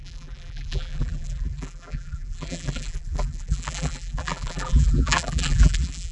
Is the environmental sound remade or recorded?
remade